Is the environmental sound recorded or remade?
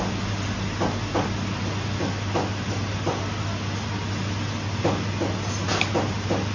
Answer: recorded